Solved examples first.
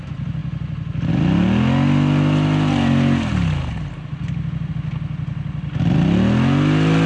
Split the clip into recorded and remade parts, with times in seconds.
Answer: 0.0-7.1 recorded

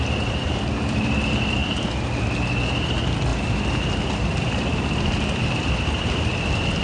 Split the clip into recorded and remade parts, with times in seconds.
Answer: 0.0-1.6 remade; 1.6-2.5 recorded; 2.5-6.8 remade

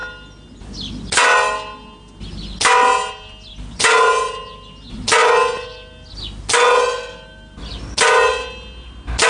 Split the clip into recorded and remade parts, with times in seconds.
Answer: 0.0-9.3 recorded

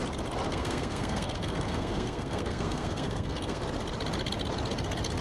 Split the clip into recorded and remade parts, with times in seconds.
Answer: 0.0-0.5 recorded; 0.5-3.6 remade; 3.6-5.2 recorded